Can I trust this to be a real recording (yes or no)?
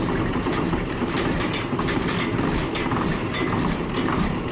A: no